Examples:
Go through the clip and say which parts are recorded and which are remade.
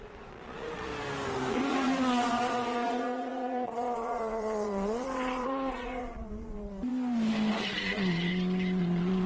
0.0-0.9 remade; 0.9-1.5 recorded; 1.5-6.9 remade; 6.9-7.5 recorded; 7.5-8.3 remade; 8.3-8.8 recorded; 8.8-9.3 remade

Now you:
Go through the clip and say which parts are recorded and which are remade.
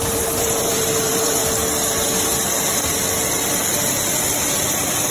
0.0-1.4 remade; 1.4-4.5 recorded; 4.5-5.1 remade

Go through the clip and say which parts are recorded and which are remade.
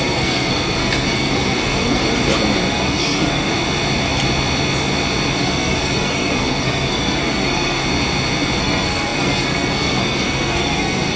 0.0-2.0 remade; 2.0-2.7 recorded; 2.7-3.5 remade; 3.5-5.4 recorded; 5.4-7.8 remade; 7.8-8.6 recorded; 8.6-11.2 remade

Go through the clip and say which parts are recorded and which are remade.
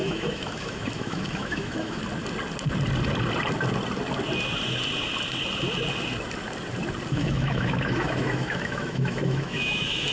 0.0-2.0 remade; 2.0-7.1 recorded; 7.1-10.1 remade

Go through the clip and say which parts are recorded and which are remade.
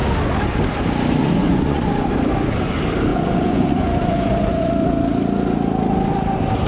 0.0-1.2 recorded; 1.2-1.8 remade; 1.8-3.1 recorded; 3.1-4.7 remade; 4.7-6.7 recorded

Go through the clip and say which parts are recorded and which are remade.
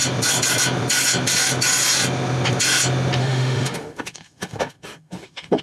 0.0-3.2 recorded; 3.2-5.6 remade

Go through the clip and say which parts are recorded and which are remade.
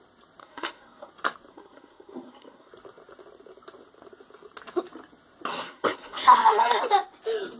0.0-0.4 recorded; 0.4-1.1 remade; 1.1-1.5 recorded; 1.5-2.7 remade; 2.7-5.5 recorded; 5.5-6.8 remade; 6.8-7.6 recorded